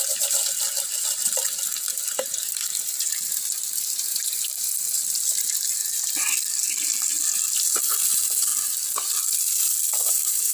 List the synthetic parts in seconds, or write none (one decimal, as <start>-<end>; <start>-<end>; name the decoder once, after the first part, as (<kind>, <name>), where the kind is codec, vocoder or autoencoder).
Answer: 0.0-0.4 (vocoder, BigVGAN v2); 2.1-8.5; 9.6-10.5